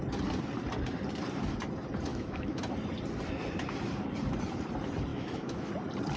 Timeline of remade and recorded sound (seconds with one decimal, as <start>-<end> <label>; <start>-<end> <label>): 0.0-2.1 recorded; 2.1-2.6 remade; 2.6-5.1 recorded; 5.1-5.7 remade; 5.7-6.2 recorded